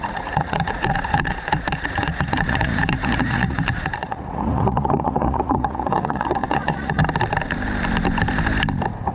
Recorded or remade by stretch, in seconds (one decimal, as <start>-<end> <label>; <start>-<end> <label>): 0.0-7.0 remade; 7.0-9.1 recorded